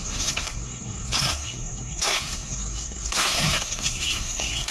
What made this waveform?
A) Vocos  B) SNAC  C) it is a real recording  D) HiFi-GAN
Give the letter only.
B